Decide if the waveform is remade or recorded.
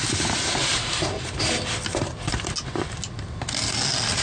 recorded